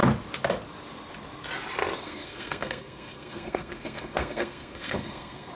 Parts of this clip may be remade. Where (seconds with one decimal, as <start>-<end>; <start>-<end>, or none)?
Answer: 2.0-5.5